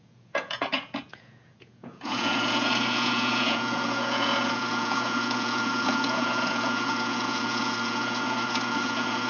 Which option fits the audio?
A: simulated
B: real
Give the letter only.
A